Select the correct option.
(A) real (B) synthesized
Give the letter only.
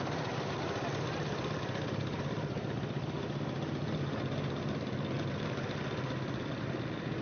A